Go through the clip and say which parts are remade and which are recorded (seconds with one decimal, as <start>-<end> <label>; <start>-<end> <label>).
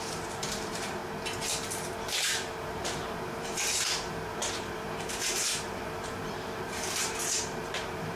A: 0.0-1.0 remade; 1.0-2.6 recorded; 2.6-8.2 remade